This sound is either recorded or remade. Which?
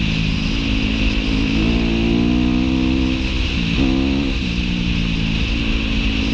recorded